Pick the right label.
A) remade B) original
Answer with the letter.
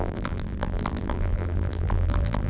A